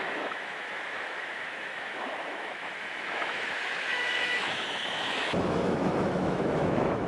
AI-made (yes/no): yes